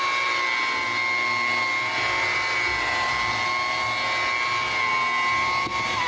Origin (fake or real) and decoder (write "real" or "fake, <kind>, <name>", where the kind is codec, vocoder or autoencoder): real